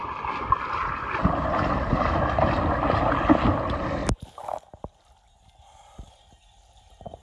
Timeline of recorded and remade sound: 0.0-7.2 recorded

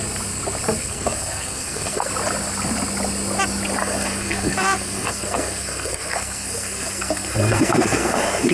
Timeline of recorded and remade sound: 0.0-0.8 recorded; 0.8-2.1 remade; 2.1-3.8 recorded; 3.8-8.5 remade

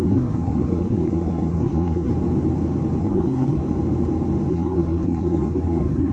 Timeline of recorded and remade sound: 0.0-2.1 remade; 2.1-3.0 recorded; 3.0-3.6 remade; 3.6-4.5 recorded; 4.5-6.1 remade

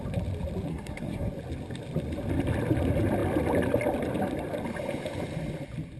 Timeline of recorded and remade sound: 0.0-0.7 recorded; 0.7-1.3 remade; 1.3-6.0 recorded

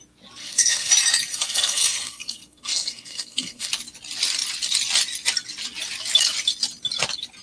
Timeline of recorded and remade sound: 0.0-0.4 recorded; 0.4-0.9 remade; 0.9-1.3 recorded; 1.3-3.7 remade; 3.7-7.4 recorded